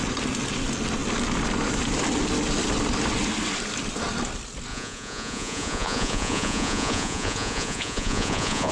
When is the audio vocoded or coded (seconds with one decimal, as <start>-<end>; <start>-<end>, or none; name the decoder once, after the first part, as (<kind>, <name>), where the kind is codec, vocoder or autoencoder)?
4.7-8.7 (vocoder, Vocos)